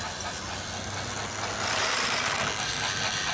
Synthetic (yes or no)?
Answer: no